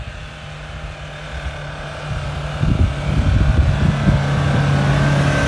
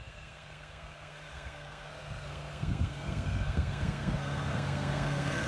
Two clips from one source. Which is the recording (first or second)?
first